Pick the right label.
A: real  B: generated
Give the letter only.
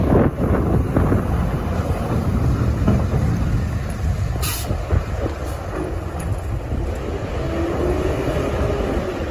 A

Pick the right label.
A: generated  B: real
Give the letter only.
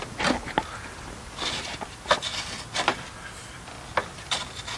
B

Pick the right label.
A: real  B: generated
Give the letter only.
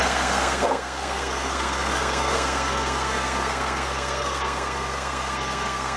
B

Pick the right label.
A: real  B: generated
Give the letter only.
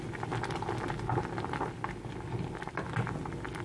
A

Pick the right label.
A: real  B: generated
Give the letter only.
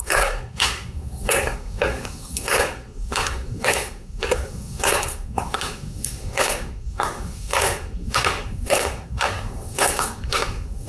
B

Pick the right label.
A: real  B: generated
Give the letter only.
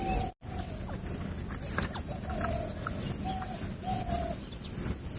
A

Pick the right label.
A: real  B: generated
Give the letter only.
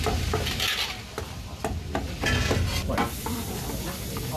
A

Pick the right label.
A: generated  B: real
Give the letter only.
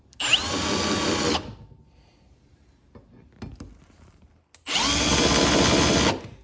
B